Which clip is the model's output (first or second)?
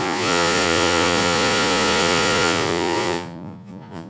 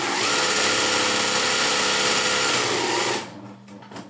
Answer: first